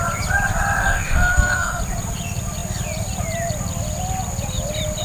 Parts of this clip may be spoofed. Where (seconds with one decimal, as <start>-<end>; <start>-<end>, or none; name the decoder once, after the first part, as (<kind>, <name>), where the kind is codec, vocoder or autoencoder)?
0.8-1.8 (codec, SNAC)